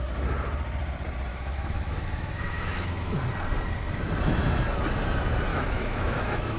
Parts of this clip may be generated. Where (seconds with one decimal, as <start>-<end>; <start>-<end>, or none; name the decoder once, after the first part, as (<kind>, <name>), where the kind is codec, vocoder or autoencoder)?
1.3-3.2 (autoencoder, DAC-VAE); 5.5-6.6